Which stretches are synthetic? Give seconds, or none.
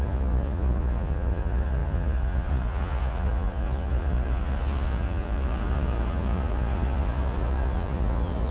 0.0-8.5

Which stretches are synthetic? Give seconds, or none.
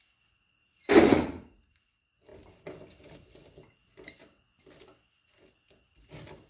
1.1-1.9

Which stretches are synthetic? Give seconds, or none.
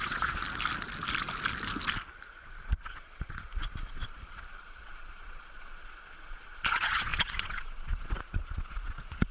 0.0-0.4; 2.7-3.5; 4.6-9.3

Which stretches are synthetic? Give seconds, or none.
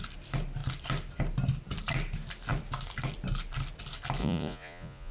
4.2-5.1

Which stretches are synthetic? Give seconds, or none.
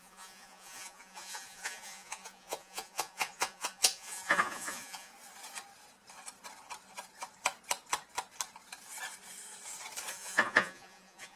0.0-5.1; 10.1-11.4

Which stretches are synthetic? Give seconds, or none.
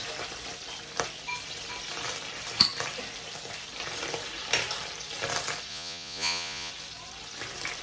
5.7-6.7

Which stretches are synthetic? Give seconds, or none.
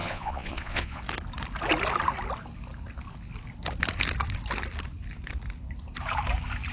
0.0-1.0